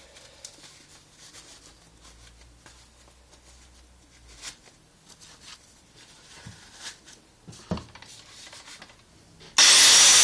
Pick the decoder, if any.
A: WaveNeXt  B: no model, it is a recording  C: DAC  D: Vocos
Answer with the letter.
B